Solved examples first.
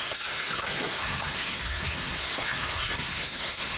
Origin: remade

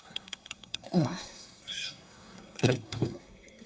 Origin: remade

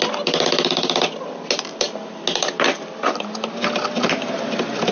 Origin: recorded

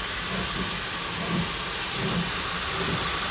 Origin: recorded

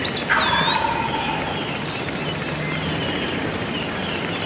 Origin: recorded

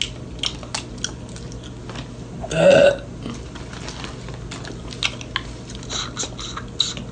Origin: recorded